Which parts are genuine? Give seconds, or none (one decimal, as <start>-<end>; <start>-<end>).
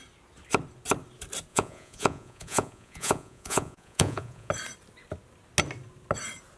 0.0-1.5; 4.5-6.6